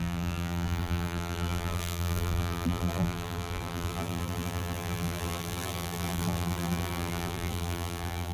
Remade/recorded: remade